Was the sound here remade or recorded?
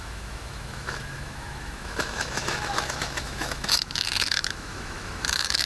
remade